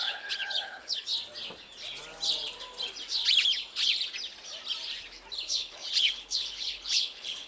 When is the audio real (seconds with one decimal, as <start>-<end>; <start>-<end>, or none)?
1.1-5.3